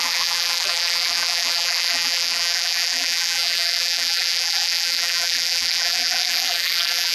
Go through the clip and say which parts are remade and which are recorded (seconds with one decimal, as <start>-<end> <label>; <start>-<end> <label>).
0.0-7.1 remade